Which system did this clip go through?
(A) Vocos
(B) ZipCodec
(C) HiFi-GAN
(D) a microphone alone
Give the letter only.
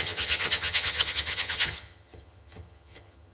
C